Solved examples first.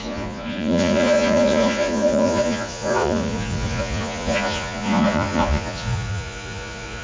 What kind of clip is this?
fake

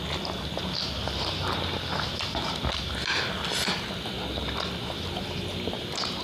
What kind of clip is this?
real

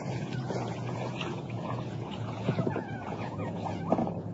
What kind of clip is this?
fake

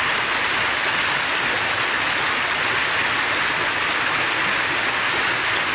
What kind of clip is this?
real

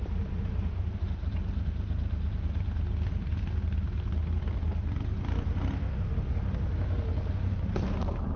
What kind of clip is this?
real